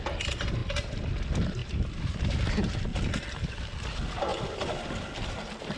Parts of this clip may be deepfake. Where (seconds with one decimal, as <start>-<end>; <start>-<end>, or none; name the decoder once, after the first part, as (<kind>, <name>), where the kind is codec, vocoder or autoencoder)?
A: 0.6-1.2 (vocoder, BigVGAN v2); 2.9-3.5; 4.3-5.3